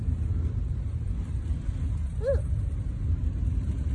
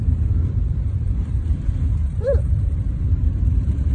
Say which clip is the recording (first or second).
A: first